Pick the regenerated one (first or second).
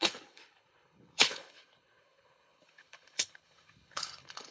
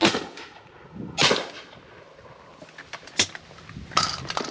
first